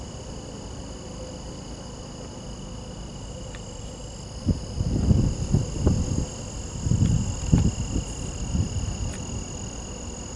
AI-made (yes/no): no